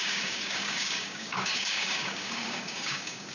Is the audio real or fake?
fake